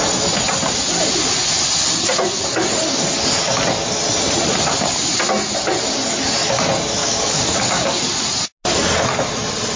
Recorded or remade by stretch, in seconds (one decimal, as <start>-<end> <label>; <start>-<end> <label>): 0.0-7.0 recorded; 7.0-8.0 remade; 8.0-9.8 recorded